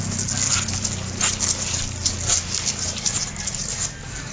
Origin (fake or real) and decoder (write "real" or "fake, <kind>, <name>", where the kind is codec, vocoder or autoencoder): real